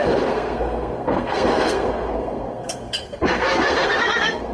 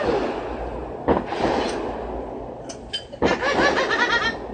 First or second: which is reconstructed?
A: first